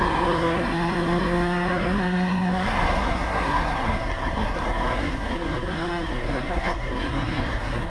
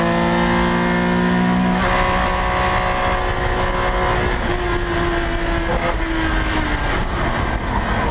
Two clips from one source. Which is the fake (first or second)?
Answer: first